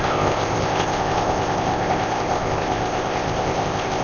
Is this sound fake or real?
fake